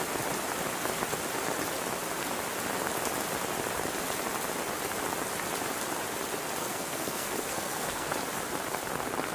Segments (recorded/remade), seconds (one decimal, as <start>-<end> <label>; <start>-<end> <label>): 0.0-6.6 recorded; 6.6-8.1 remade; 8.1-9.3 recorded